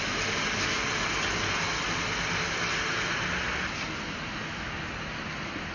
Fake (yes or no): no